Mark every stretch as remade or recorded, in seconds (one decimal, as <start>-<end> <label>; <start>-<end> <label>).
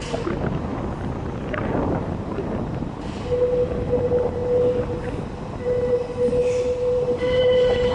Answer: 0.0-7.9 recorded